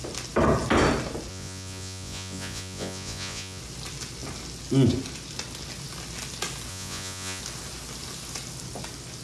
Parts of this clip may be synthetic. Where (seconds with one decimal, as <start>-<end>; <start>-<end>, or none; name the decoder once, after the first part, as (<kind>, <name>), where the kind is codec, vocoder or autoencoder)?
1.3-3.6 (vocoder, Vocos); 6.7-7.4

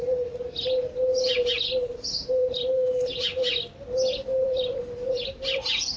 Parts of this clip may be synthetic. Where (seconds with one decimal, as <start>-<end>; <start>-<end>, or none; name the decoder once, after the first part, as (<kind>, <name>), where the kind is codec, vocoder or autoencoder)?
2.4-3.3 (vocoder, BigVGAN v2); 4.3-6.0

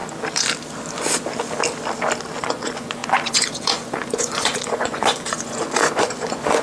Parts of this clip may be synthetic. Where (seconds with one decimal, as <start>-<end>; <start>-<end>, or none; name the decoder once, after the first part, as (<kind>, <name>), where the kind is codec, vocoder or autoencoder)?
2.4-6.6 (vocoder, Vocos)

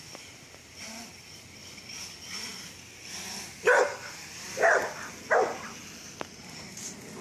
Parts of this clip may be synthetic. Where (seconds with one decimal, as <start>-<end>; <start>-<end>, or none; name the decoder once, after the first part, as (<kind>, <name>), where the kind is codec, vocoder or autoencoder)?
none

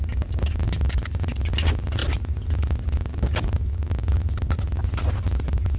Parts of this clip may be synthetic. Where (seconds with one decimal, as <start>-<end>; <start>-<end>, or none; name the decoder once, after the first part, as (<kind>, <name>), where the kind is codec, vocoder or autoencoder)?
none

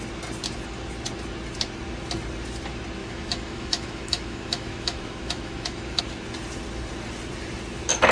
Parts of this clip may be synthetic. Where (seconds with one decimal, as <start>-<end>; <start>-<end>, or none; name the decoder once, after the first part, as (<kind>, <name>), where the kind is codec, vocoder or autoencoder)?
3.0-6.0 (autoencoder, DAC-VAE)

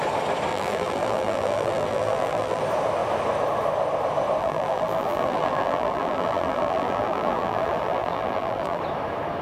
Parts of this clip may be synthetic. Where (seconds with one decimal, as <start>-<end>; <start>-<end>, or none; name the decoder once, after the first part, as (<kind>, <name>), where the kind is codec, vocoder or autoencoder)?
0.5-2.6 (vocoder, BigVGAN v2); 4.4-8.8